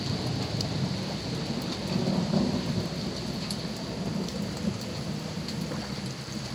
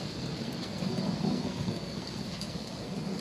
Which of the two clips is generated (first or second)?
second